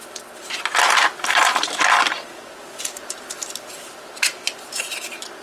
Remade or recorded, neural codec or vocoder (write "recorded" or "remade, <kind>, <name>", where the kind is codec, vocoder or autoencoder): recorded